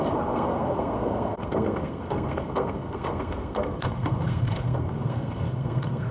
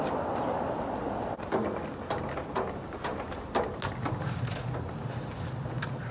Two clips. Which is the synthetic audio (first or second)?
first